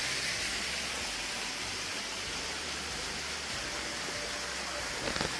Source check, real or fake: real